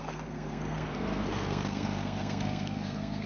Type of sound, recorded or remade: remade